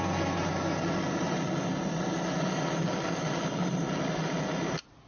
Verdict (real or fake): real